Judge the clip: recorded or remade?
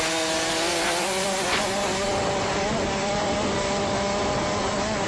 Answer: recorded